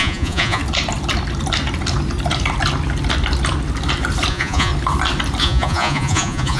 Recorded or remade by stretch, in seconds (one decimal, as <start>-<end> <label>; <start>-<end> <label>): 0.0-0.6 remade; 0.6-4.3 recorded; 4.3-4.7 remade; 4.7-5.4 recorded; 5.4-6.6 remade